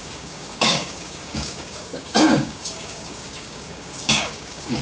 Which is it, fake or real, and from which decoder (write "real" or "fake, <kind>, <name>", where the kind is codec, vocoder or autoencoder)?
fake, codec, DAC